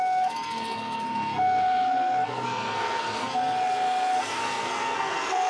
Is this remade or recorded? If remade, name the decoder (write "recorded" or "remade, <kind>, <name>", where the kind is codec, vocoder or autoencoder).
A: remade, codec, SNAC